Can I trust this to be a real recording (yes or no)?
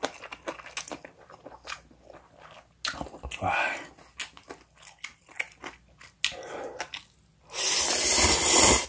yes